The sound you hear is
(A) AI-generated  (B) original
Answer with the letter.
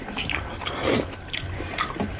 B